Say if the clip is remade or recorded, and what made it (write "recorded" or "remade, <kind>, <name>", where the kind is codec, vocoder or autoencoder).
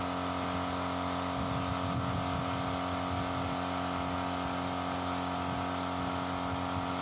recorded